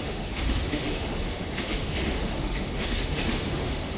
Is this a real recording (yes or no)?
no